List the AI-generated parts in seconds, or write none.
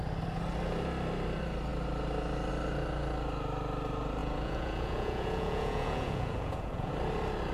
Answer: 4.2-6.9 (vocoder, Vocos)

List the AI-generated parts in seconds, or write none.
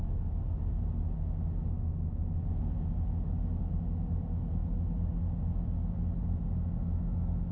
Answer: none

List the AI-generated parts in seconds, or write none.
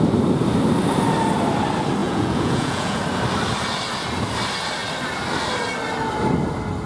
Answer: 2.0-3.0 (vocoder, Vocos)